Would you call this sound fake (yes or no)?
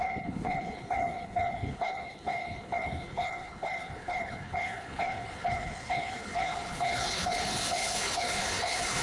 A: yes